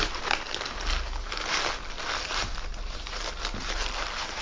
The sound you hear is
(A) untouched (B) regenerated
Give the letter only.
A